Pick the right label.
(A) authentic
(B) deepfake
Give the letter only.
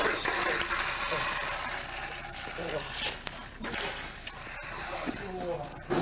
A